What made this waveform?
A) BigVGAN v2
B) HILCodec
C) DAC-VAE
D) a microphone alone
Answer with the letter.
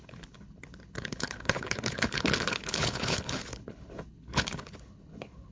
B